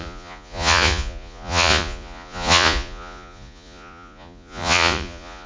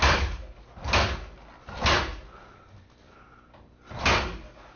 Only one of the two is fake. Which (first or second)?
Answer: first